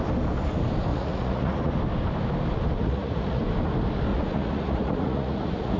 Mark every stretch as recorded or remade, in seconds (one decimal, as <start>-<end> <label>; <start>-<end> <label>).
0.0-0.9 recorded; 0.9-1.7 remade; 1.7-2.8 recorded; 2.8-3.4 remade; 3.4-4.1 recorded; 4.1-5.8 remade